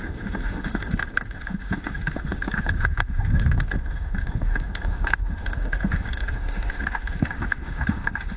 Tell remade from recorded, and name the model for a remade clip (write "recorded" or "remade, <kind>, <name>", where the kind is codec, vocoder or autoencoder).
remade, autoencoder, DAC-VAE